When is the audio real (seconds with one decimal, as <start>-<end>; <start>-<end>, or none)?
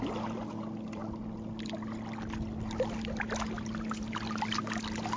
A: 0.0-5.2